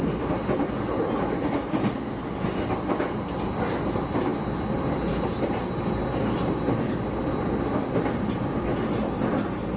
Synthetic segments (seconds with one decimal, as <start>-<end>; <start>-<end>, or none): none